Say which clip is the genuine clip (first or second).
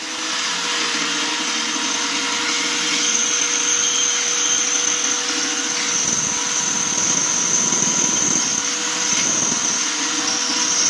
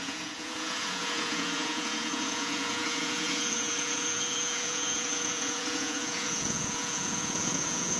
first